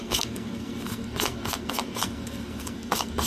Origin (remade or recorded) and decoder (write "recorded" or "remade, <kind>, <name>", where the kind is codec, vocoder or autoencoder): remade, codec, SNAC